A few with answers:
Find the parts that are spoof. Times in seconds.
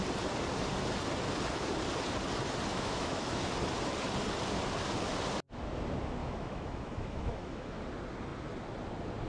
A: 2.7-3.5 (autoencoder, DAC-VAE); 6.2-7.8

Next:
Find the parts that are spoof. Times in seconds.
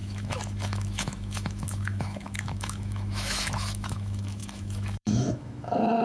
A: 0.0-6.0 (autoencoder, DAC-VAE)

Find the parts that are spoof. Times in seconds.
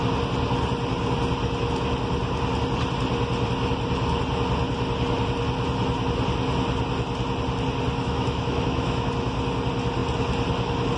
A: 8.0-9.1 (autoencoder, DAC-VAE)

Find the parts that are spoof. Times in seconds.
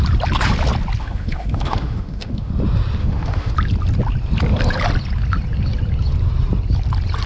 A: 1.0-2.5 (autoencoder, DAC-VAE); 3.0-3.5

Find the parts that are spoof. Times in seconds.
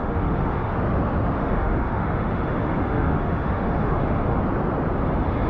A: 0.0-0.7 (autoencoder, DAC-VAE); 1.4-4.4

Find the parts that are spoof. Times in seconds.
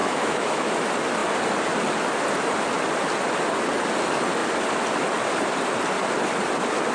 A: 0.0-0.7 (autoencoder, DAC-VAE)